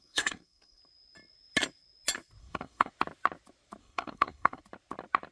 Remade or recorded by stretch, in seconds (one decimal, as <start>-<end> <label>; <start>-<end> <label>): 0.0-0.8 remade; 0.8-2.4 recorded; 2.4-2.9 remade; 2.9-3.8 recorded; 3.8-4.6 remade; 4.6-5.3 recorded